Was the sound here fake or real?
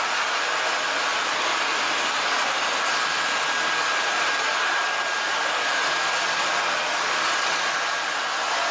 real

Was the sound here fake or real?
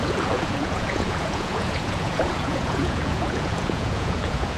fake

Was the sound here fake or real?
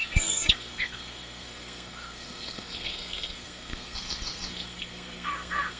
fake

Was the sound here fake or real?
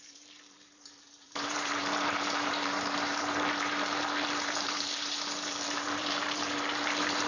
fake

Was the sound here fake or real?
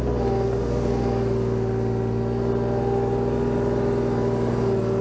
real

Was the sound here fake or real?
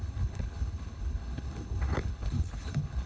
fake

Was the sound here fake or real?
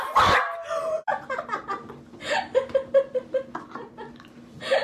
real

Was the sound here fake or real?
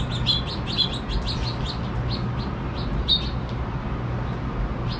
real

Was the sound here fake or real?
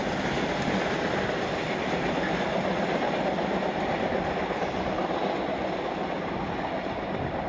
real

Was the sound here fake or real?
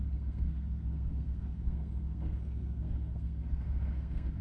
fake